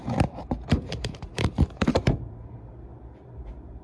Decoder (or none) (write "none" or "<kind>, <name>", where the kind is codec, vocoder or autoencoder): vocoder, BigVGAN v2